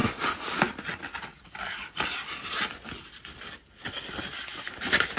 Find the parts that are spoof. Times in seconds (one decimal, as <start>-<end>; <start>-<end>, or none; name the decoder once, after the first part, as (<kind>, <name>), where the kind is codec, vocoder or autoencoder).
1.3-3.7 (vocoder, BigVGAN v2)